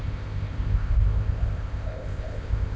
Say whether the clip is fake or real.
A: fake